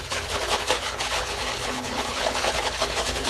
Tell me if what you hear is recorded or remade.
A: remade